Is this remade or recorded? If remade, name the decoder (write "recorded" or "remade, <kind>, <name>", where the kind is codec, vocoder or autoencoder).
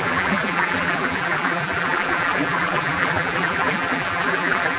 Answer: remade, vocoder, BigVGAN v2